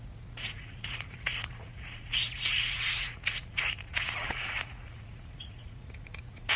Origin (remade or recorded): remade